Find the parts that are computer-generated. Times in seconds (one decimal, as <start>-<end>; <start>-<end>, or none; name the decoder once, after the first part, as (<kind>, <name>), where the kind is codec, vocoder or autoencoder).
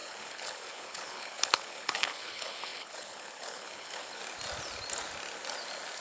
0.0-4.2 (codec, HILCodec)